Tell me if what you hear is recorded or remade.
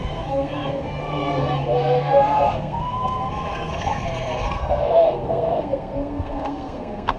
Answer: remade